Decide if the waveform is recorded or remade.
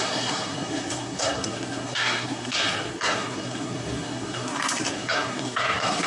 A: remade